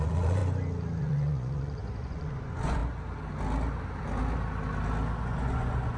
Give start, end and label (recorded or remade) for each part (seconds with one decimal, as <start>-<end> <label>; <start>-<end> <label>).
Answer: 0.0-0.4 remade; 0.4-1.0 recorded; 1.0-2.8 remade; 2.8-5.2 recorded; 5.2-6.0 remade